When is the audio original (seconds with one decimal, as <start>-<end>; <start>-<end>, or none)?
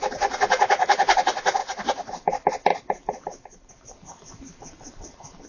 0.0-5.5